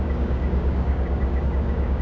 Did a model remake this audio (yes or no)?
yes